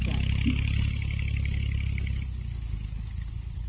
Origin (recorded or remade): recorded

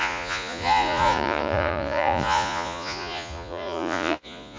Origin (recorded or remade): remade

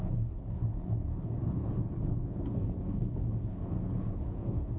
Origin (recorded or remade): remade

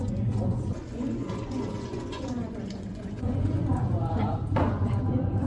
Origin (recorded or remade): remade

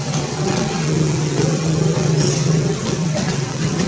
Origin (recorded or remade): remade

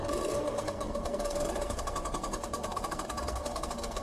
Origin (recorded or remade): remade